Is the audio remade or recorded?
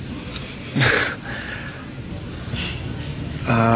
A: recorded